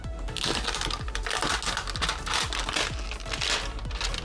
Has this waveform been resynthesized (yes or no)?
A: no